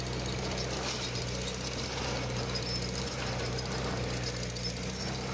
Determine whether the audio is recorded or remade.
recorded